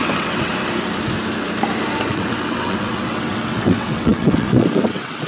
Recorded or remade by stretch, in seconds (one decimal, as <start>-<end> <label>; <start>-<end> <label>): 0.0-0.5 remade; 0.5-2.1 recorded; 2.1-5.3 remade

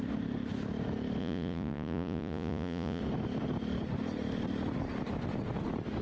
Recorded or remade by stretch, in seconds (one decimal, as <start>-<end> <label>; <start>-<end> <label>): 0.0-1.2 recorded; 1.2-3.0 remade; 3.0-6.0 recorded

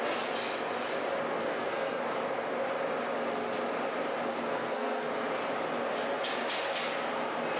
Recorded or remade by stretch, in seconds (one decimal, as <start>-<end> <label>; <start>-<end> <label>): 0.0-1.4 recorded; 1.4-2.0 remade; 2.0-4.3 recorded; 4.3-5.1 remade; 5.1-7.6 recorded

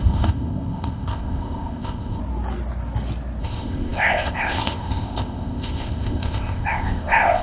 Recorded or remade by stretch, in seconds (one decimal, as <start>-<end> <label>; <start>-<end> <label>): 0.0-2.2 remade; 2.2-3.4 recorded; 3.4-7.4 remade

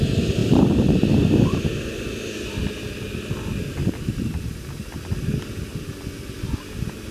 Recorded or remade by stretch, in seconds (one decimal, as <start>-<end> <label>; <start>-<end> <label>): 0.0-0.4 recorded; 0.4-1.6 remade; 1.6-3.8 recorded; 3.8-4.5 remade; 4.5-7.1 recorded

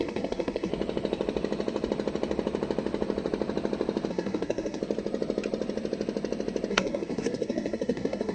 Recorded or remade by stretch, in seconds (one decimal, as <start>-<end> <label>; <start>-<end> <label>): 0.0-0.7 remade; 0.7-4.1 recorded; 4.1-4.8 remade; 4.8-6.7 recorded; 6.7-8.3 remade

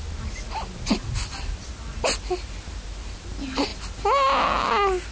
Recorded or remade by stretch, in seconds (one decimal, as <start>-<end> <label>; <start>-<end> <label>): 0.0-5.1 recorded